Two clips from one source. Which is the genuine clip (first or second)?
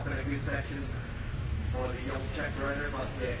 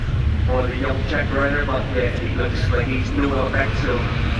second